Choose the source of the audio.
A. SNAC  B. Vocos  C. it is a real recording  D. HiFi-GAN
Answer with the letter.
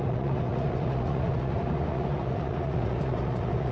B